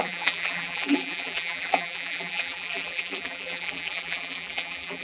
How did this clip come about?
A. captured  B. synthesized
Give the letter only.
B